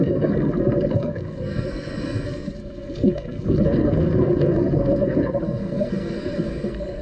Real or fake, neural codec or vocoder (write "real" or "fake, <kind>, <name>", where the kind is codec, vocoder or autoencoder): fake, codec, SNAC